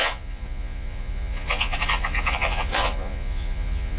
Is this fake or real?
fake